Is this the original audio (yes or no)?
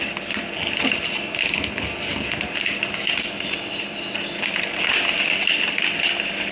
yes